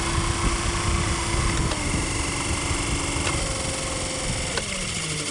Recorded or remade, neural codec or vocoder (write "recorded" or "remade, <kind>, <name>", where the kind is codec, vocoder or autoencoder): recorded